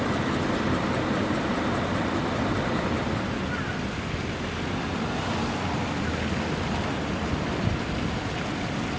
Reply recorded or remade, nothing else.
recorded